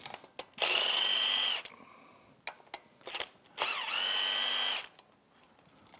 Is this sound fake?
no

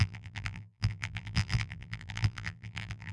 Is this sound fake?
yes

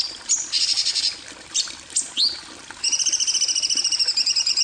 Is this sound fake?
no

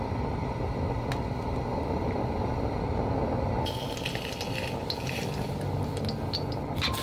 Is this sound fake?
no